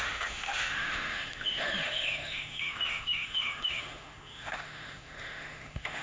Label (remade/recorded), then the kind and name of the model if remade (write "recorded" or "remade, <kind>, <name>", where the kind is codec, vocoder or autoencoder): remade, autoencoder, DAC-VAE